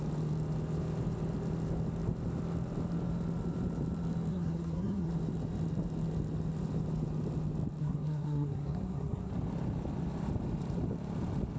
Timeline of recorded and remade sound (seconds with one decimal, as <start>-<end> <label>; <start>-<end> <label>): 0.0-4.3 recorded; 4.3-5.1 remade; 5.1-7.8 recorded; 7.8-9.3 remade; 9.3-11.6 recorded